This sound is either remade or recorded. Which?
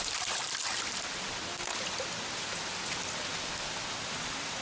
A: recorded